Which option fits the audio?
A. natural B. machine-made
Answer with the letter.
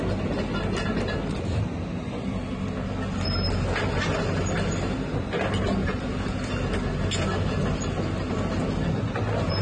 A